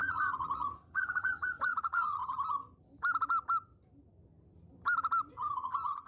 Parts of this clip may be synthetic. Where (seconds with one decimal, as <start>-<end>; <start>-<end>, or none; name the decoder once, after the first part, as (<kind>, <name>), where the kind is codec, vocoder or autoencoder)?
0.0-2.2 (vocoder, Vocos); 5.3-6.1